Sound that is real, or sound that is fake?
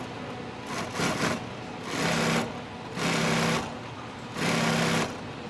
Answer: real